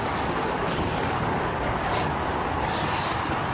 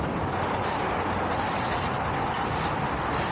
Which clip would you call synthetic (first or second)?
first